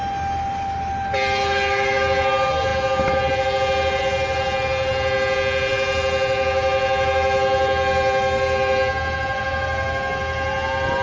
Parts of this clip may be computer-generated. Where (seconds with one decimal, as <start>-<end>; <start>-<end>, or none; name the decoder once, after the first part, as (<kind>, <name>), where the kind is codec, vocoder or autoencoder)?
none